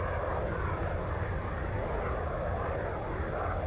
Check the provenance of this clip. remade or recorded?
recorded